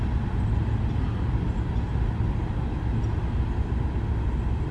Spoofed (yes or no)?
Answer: no